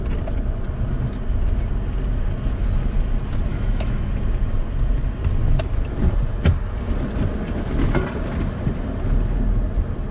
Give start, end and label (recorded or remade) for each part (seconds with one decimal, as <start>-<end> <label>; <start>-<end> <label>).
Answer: 0.0-3.5 recorded; 3.5-4.1 remade; 4.1-10.1 recorded